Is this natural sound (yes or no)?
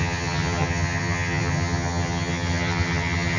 no